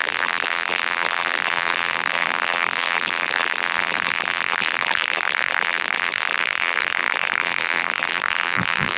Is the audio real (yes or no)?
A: no